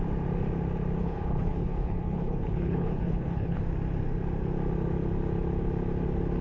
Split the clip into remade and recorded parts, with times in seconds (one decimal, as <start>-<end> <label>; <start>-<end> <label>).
0.0-1.0 recorded; 1.0-3.6 remade; 3.6-6.4 recorded